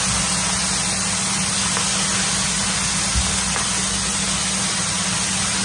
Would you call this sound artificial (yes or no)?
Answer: no